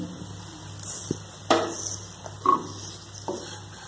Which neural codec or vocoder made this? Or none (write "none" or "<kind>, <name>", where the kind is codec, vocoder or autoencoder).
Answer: none